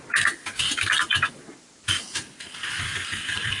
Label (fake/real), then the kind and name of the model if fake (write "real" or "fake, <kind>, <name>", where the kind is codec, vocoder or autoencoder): real